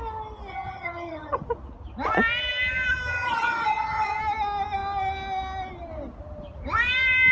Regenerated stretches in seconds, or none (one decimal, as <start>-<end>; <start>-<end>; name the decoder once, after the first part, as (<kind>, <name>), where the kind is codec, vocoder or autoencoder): 0.5-1.4 (vocoder, HiFi-GAN); 3.1-4.2